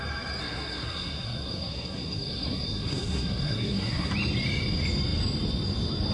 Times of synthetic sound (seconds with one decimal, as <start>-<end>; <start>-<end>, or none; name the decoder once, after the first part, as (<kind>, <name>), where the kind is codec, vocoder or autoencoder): 0.4-4.1 (codec, SNAC)